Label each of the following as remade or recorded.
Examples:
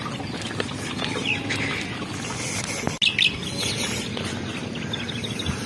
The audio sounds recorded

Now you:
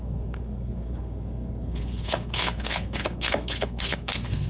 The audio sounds remade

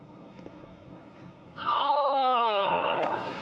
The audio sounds remade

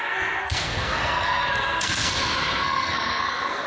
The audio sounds remade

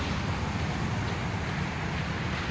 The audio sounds recorded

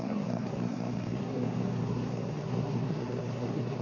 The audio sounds remade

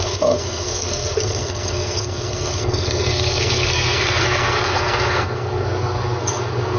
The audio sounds remade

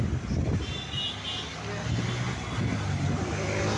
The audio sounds recorded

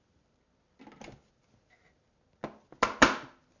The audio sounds recorded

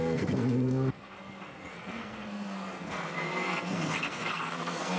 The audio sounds remade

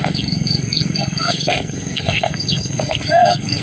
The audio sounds remade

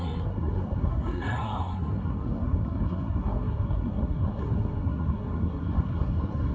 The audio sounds remade